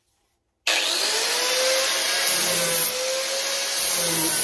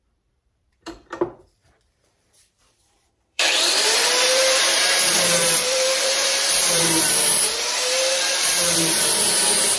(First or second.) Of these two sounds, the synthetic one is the second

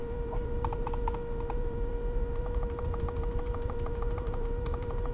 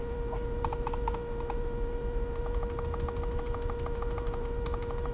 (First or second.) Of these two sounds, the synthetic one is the first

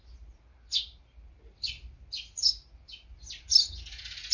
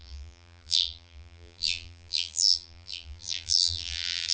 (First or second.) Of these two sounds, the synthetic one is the second